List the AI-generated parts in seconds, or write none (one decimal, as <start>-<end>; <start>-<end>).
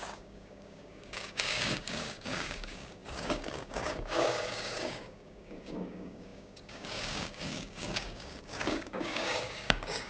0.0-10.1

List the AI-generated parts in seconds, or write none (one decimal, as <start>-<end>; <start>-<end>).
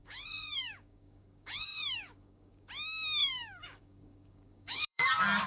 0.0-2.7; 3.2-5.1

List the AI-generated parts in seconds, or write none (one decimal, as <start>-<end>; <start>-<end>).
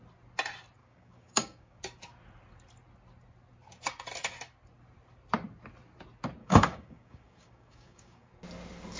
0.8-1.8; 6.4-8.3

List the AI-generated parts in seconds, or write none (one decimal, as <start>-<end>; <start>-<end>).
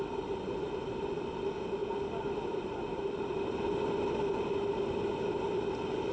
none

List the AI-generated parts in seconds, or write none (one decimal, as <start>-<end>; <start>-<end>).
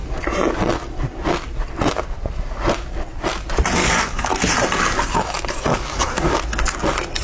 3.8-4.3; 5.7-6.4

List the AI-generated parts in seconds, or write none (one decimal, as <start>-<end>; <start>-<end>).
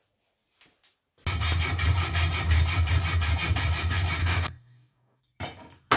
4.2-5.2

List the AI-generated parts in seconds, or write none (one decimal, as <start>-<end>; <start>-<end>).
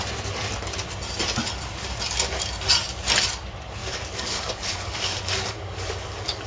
3.8-6.5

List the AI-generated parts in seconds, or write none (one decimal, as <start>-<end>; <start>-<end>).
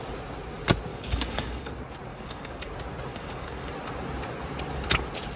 0.9-1.7; 2.1-2.7; 3.1-3.7